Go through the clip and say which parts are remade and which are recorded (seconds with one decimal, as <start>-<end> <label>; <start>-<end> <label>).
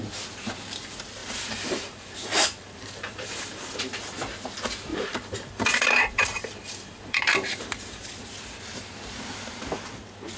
0.0-1.2 recorded; 1.2-3.8 remade; 3.8-4.9 recorded; 4.9-8.1 remade; 8.1-10.4 recorded